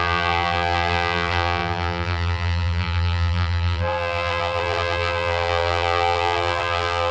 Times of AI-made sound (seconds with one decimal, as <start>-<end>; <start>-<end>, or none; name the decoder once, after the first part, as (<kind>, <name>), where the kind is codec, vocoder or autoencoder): 0.0-7.1 (vocoder, BigVGAN v2)